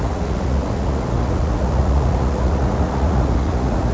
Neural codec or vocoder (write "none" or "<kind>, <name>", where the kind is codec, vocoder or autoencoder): vocoder, Vocos